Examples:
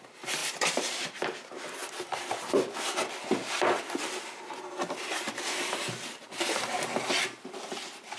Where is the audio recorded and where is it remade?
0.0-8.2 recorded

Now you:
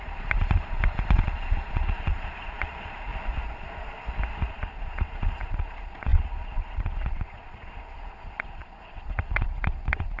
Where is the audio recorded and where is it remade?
0.0-3.1 remade; 3.1-4.5 recorded; 4.5-10.2 remade

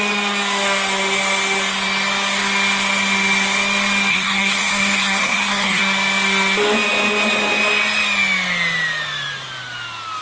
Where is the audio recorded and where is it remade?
0.0-4.1 recorded; 4.1-5.8 remade; 5.8-10.2 recorded

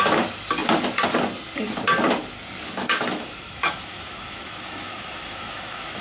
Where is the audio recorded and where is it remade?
0.0-2.8 recorded; 2.8-6.0 remade

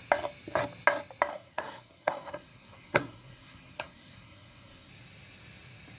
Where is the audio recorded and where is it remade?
0.0-1.3 recorded; 1.3-4.9 remade; 4.9-6.0 recorded

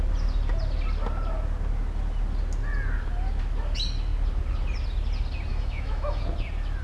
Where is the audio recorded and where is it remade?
0.0-5.5 recorded; 5.5-6.2 remade; 6.2-6.8 recorded

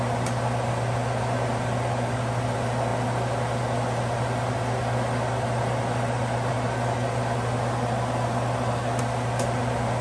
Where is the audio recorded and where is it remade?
0.0-10.0 recorded